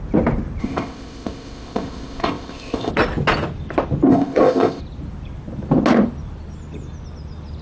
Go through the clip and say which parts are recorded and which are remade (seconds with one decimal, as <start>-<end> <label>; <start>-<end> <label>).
0.0-0.6 recorded; 0.6-2.9 remade; 2.9-4.1 recorded; 4.1-4.8 remade; 4.8-7.6 recorded